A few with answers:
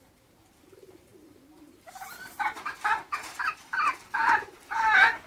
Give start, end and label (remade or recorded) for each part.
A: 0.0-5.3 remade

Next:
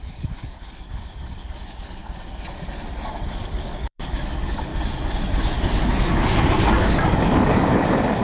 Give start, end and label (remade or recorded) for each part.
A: 0.0-2.0 remade; 2.0-3.3 recorded; 3.3-4.7 remade; 4.7-5.9 recorded; 5.9-8.2 remade